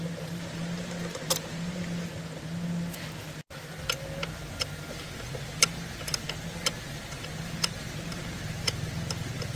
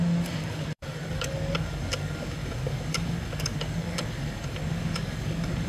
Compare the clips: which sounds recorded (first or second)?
first